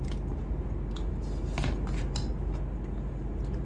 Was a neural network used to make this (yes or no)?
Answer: no